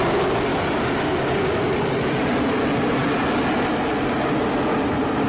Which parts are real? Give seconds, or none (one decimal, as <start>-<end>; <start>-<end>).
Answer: 0.0-0.5; 2.0-5.3